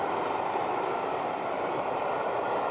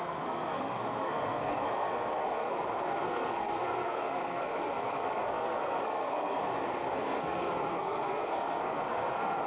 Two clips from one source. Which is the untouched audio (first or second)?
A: first